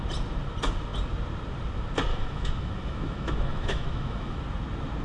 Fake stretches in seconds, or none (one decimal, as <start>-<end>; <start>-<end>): 2.1-4.4